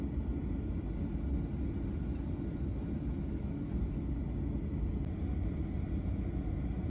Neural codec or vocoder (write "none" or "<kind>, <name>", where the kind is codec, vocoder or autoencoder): none